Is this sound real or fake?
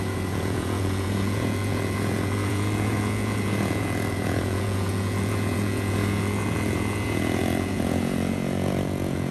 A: fake